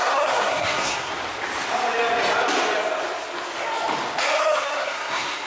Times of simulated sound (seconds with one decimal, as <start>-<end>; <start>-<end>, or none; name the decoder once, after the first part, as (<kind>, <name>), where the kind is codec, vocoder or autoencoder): 0.0-1.1 (codec, SNAC); 4.4-5.5